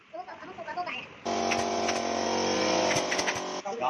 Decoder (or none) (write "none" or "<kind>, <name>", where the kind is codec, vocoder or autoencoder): none